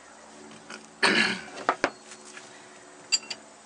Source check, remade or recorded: recorded